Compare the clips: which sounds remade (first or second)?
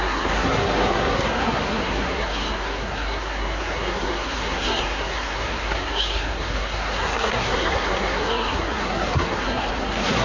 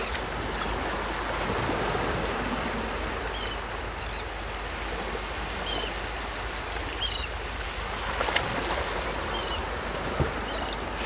first